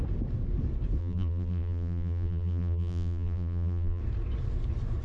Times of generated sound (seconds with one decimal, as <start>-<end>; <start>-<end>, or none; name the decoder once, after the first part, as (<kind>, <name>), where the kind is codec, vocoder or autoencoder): 1.0-4.0 (vocoder, BigVGAN v2)